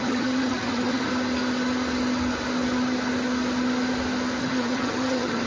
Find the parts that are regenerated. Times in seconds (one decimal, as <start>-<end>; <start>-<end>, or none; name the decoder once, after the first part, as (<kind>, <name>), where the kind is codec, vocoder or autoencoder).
0.0-1.1 (vocoder, HiFi-GAN); 4.4-5.5